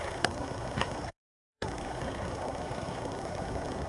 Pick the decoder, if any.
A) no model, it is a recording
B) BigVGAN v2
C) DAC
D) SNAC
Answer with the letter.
D